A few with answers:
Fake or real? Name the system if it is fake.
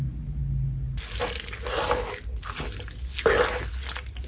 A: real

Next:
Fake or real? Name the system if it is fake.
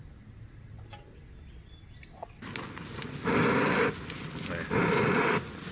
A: real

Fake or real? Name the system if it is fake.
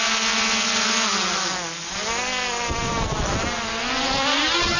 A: real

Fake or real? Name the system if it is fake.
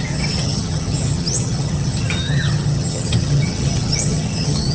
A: fake, vocoder, HiFi-GAN